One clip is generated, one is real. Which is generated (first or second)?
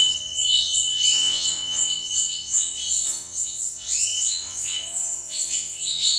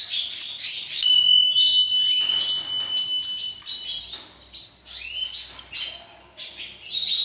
first